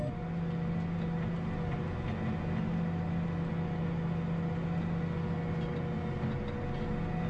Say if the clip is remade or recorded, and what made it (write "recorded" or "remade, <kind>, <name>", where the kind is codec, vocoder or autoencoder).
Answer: recorded